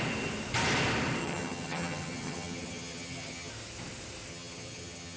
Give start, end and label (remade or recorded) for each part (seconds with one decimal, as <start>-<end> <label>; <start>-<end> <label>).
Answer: 0.0-1.2 recorded; 1.2-3.5 remade; 3.5-4.3 recorded; 4.3-5.2 remade